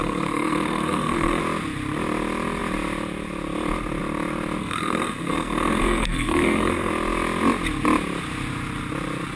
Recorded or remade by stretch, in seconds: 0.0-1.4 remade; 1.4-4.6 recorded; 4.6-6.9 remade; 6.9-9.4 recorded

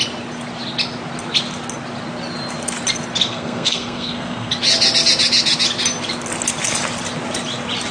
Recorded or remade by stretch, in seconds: 0.0-3.3 recorded; 3.3-4.5 remade; 4.5-7.9 recorded

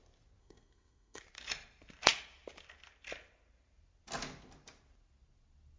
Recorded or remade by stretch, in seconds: 0.0-0.4 recorded; 0.4-1.2 remade; 1.2-5.8 recorded

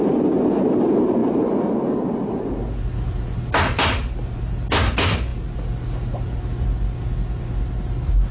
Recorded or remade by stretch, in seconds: 0.0-8.3 recorded

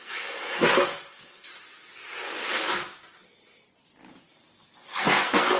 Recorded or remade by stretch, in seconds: 0.0-1.5 remade; 1.5-4.9 recorded; 4.9-5.6 remade

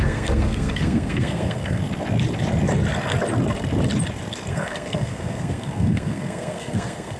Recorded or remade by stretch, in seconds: 0.0-1.8 remade; 1.8-4.5 recorded; 4.5-7.2 remade

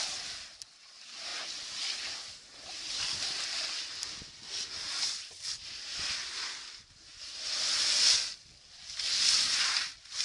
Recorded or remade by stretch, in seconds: 0.0-10.2 recorded

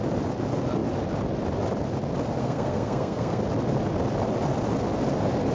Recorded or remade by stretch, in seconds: 0.0-2.4 recorded; 2.4-3.4 remade; 3.4-5.5 recorded